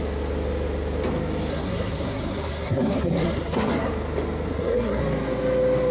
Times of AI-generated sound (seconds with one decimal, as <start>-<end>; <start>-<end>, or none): 1.5-3.9; 4.5-5.0

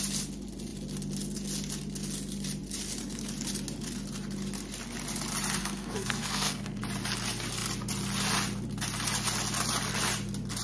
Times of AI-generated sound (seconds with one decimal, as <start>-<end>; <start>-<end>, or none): 5.6-6.8

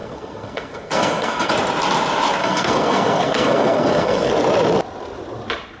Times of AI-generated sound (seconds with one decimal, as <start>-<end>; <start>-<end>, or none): 0.0-1.5; 2.4-4.3

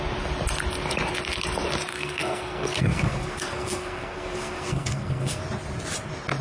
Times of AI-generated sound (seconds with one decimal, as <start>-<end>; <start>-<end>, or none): 1.9-5.4